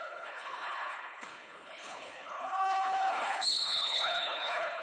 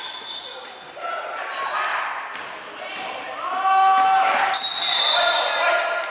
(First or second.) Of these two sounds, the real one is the second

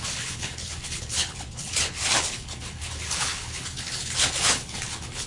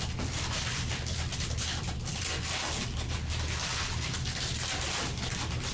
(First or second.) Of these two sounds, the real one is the second